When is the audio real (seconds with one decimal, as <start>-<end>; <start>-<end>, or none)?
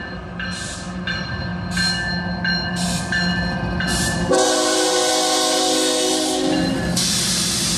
1.5-3.9; 5.1-7.2